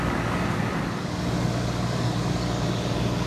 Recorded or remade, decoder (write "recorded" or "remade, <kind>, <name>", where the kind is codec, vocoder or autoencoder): remade, codec, DAC